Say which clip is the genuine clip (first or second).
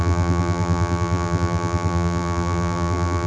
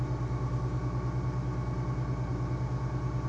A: second